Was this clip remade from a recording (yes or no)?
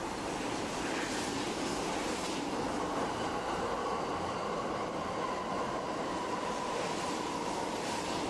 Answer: no